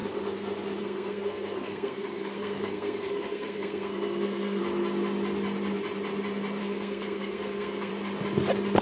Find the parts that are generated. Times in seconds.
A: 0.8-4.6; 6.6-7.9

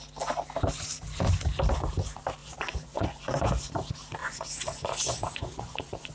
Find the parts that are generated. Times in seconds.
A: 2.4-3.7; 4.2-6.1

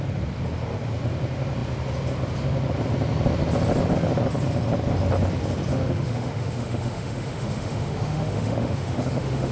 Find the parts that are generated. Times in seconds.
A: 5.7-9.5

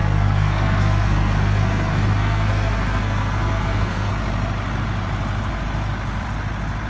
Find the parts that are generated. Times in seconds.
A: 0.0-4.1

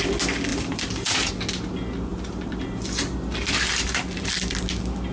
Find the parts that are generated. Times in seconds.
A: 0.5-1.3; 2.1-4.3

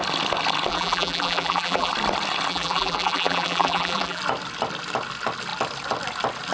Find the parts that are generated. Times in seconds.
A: 0.7-1.9; 2.5-4.2